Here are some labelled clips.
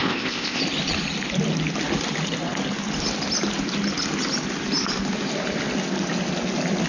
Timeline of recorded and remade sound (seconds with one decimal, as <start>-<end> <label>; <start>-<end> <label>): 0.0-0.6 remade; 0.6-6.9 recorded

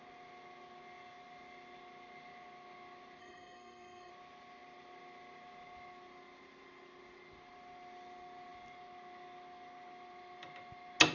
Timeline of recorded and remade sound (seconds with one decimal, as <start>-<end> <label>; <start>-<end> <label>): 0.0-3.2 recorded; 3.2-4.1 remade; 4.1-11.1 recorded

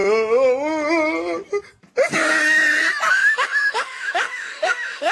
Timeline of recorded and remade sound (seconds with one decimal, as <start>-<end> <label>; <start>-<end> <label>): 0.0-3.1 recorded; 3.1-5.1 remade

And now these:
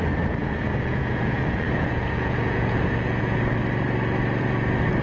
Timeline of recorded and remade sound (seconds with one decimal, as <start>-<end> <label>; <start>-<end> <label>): 0.0-0.4 recorded; 0.4-3.4 remade; 3.4-5.0 recorded

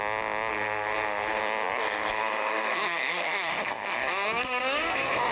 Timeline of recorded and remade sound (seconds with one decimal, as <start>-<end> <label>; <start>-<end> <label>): 0.0-0.5 recorded; 0.5-1.4 remade; 1.4-1.8 recorded; 1.8-5.3 remade

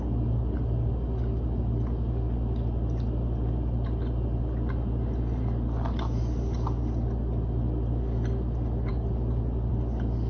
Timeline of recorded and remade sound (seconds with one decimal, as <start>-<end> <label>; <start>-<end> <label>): 0.0-10.3 recorded